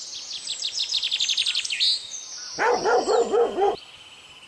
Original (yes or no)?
yes